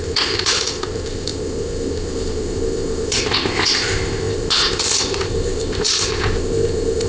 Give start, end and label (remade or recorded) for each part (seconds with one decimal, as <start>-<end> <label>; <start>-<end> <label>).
0.0-7.1 remade